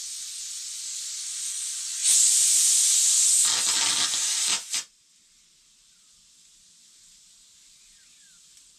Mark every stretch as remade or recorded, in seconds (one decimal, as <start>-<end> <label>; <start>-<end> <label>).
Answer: 0.0-8.8 recorded

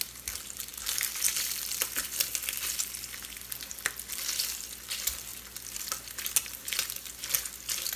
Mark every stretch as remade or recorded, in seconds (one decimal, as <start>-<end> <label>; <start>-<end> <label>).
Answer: 0.0-8.0 recorded

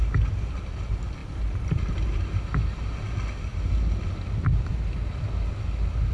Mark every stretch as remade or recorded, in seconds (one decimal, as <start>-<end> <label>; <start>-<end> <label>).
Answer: 0.0-1.2 recorded; 1.2-1.8 remade; 1.8-6.1 recorded

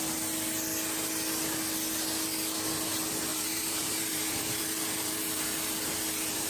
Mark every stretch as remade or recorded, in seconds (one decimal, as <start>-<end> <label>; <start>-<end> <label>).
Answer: 0.0-3.3 recorded; 3.3-6.5 remade

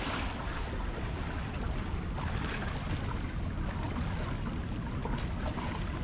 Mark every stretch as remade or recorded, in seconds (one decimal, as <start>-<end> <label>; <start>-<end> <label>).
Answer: 0.0-6.0 recorded

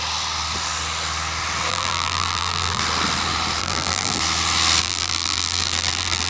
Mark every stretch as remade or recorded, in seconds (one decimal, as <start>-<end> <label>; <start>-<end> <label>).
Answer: 0.0-1.7 recorded; 1.7-2.8 remade; 2.8-3.6 recorded; 3.6-4.2 remade; 4.2-4.8 recorded; 4.8-6.3 remade

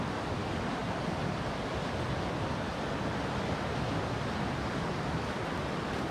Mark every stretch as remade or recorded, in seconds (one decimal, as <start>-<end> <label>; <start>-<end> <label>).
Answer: 0.0-6.1 recorded